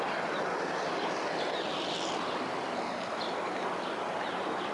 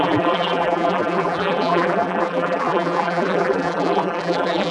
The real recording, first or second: first